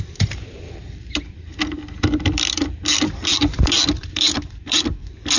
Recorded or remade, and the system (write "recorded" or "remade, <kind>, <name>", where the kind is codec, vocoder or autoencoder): remade, vocoder, BigVGAN v2